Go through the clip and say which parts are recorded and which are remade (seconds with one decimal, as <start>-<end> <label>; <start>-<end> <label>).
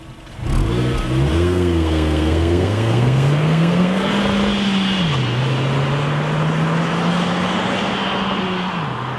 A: 0.0-1.3 recorded; 1.3-4.1 remade; 4.1-9.2 recorded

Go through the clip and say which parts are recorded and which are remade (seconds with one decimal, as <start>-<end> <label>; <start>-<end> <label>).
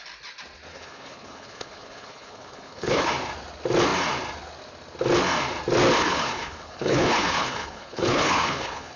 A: 0.0-0.7 recorded; 0.7-3.1 remade; 3.1-6.0 recorded; 6.0-9.0 remade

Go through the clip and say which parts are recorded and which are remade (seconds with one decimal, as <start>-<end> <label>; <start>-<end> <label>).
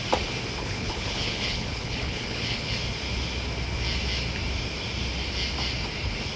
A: 0.0-0.6 recorded; 0.6-2.7 remade; 2.7-6.4 recorded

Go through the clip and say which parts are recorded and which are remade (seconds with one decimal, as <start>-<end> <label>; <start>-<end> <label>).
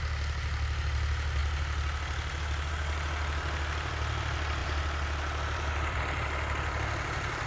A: 0.0-4.6 recorded; 4.6-6.0 remade; 6.0-7.5 recorded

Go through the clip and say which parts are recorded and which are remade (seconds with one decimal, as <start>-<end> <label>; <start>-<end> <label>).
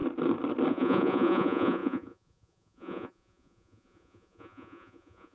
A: 0.0-0.7 recorded; 0.7-5.3 remade